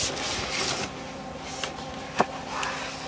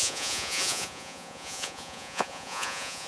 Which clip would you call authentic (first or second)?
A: first